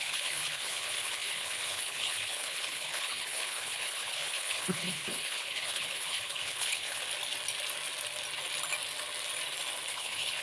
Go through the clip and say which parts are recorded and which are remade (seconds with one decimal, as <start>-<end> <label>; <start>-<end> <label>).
0.0-7.0 remade; 7.0-9.9 recorded; 9.9-10.4 remade